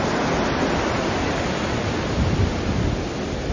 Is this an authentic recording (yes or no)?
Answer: yes